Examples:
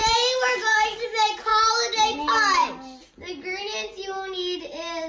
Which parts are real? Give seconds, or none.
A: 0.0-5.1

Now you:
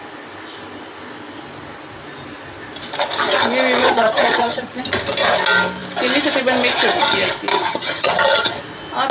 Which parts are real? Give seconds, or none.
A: 0.0-3.8; 4.8-7.5; 8.5-9.1

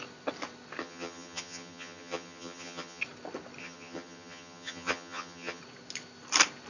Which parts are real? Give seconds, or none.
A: 0.0-0.8; 3.0-3.6; 5.6-6.7

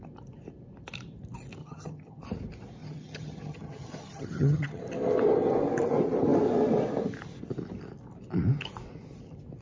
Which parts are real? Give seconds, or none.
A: 0.0-1.6; 2.2-2.8; 4.8-9.6